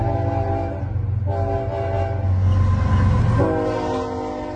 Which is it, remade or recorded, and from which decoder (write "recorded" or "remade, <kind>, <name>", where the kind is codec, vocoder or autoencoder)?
recorded